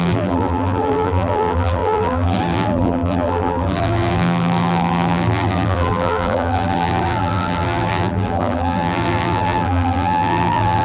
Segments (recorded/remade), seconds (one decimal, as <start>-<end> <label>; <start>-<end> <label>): 0.0-10.8 remade